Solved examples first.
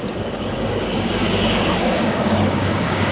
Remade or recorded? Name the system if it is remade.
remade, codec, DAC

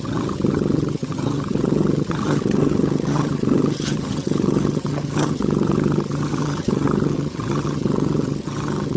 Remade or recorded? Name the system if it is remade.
remade, vocoder, HiFi-GAN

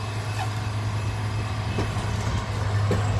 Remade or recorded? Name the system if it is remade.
recorded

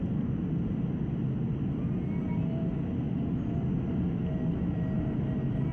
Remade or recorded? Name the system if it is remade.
recorded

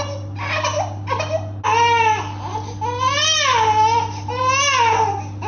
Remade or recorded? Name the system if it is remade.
recorded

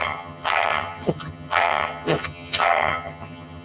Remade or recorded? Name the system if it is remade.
remade, vocoder, HiFi-GAN